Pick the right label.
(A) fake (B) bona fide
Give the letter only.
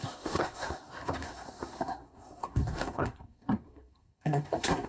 A